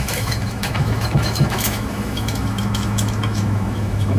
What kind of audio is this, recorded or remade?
remade